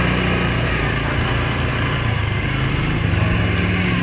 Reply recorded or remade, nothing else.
recorded